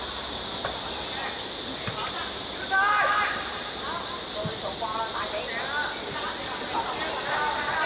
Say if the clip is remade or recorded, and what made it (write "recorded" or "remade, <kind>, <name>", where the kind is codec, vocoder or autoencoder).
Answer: recorded